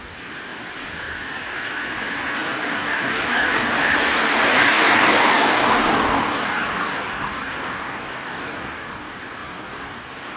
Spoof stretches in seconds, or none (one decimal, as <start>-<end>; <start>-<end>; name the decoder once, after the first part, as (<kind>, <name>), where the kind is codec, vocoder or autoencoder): 0.0-10.4 (codec, DAC)